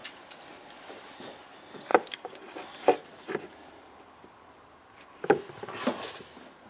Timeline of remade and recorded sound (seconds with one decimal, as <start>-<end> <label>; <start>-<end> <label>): 0.0-6.7 recorded